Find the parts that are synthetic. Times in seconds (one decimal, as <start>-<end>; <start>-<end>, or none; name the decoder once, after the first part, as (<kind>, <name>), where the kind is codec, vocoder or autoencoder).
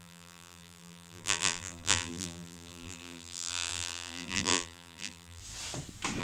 0.0-5.4 (vocoder, BigVGAN v2)